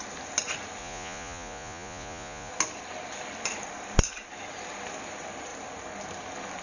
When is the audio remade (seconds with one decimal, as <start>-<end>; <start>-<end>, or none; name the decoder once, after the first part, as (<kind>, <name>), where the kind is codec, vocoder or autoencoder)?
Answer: 0.8-2.5 (vocoder, Vocos)